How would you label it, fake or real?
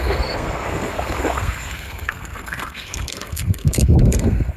fake